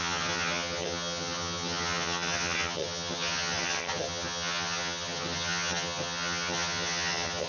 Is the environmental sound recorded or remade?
remade